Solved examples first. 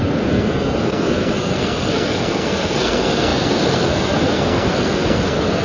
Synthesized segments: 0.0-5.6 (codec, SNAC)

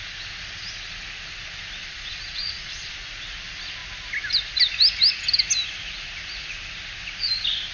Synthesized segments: 1.8-2.9 (vocoder, Vocos)

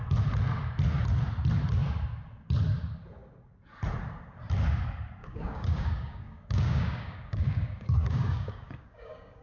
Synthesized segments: 5.2-9.4 (codec, DAC)

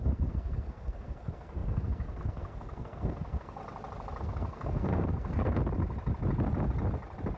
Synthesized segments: 0.0-3.6 (codec, SNAC); 4.2-5.6

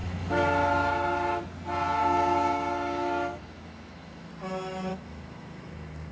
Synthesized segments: 0.0-1.4 (autoencoder, DAC-VAE); 2.0-4.3; 4.9-6.1